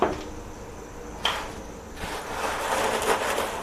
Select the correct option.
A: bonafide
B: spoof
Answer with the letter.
A